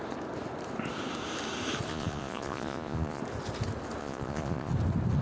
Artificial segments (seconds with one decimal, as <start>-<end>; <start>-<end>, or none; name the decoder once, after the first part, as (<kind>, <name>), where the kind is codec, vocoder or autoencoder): 1.9-3.2 (vocoder, Vocos); 4.0-4.7